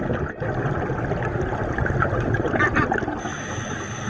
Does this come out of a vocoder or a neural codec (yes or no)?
no